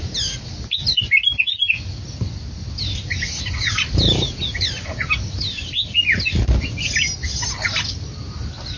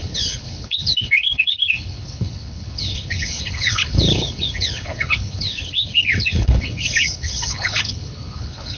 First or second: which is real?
first